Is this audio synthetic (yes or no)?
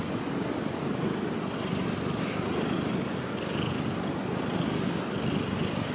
no